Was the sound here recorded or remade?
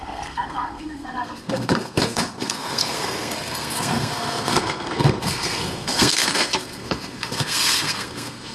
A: remade